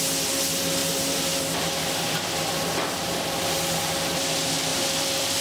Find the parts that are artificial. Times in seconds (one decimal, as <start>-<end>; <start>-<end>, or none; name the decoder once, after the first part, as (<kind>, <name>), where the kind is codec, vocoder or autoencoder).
0.8-3.4 (vocoder, BigVGAN v2); 4.7-5.4